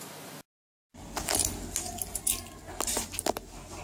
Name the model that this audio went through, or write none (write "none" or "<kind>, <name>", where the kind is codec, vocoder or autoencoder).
none